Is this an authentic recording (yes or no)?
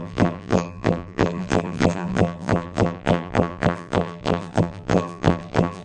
no